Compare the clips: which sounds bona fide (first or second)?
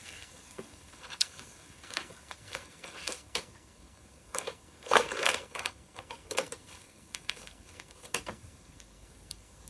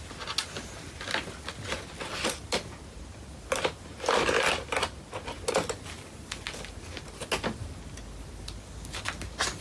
second